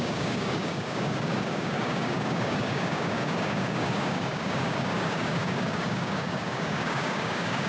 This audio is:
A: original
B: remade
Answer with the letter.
B